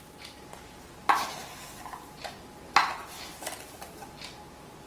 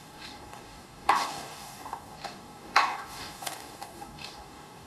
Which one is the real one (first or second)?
first